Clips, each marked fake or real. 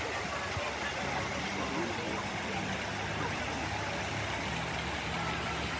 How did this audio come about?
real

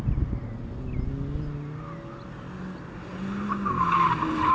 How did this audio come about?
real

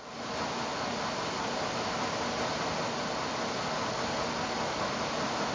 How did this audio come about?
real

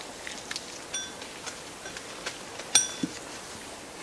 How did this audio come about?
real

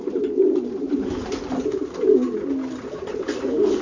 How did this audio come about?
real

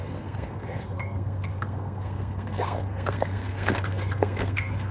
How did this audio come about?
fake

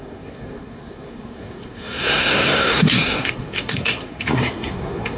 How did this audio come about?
fake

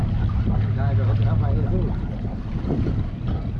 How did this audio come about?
real